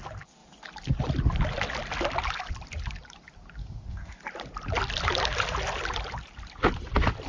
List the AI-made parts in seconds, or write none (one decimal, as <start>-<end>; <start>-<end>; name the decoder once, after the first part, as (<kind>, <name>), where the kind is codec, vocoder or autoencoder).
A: 3.6-4.2 (codec, SNAC)